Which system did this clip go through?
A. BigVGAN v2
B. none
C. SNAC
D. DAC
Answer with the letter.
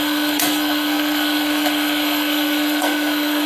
C